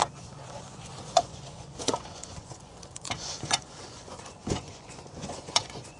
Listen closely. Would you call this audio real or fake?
fake